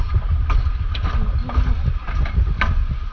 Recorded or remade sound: recorded